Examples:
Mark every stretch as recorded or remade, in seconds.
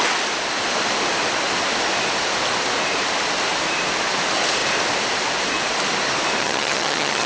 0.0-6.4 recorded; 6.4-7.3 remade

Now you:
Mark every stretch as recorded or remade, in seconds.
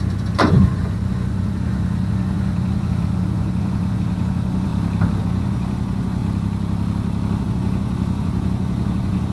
0.0-4.7 remade; 4.7-5.2 recorded; 5.2-6.2 remade; 6.2-7.4 recorded; 7.4-9.3 remade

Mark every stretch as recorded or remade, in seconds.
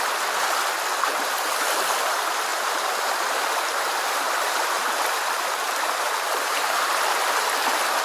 0.0-2.5 recorded; 2.5-7.0 remade; 7.0-8.0 recorded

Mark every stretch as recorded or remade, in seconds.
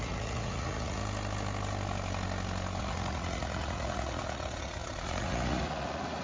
0.0-1.0 remade; 1.0-2.8 recorded; 2.8-6.2 remade